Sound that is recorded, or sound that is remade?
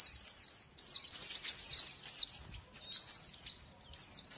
recorded